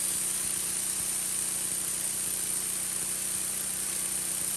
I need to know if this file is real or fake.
real